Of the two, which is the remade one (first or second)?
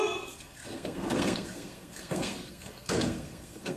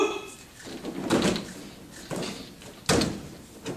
first